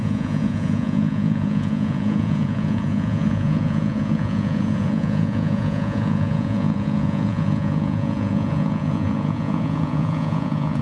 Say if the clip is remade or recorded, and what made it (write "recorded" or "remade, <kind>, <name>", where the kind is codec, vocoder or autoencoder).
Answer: remade, vocoder, Vocos